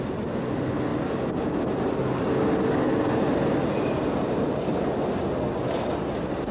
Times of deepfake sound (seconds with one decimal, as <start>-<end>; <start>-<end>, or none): none